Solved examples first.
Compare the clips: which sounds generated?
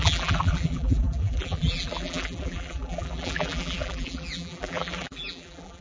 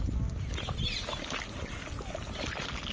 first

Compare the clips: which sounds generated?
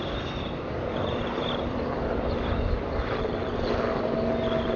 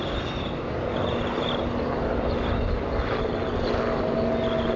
first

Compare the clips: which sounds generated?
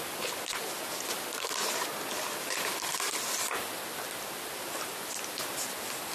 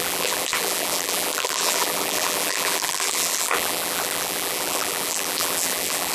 second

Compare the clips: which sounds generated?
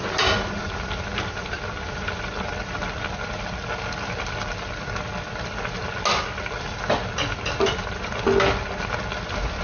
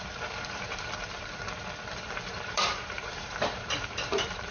second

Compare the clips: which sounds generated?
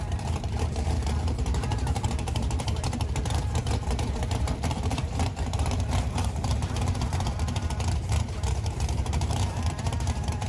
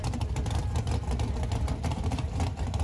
first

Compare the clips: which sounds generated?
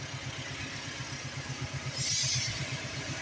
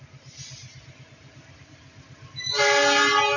first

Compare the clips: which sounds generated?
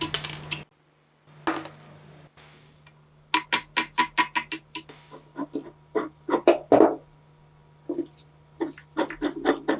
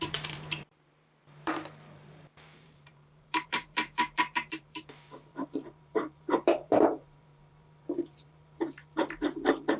second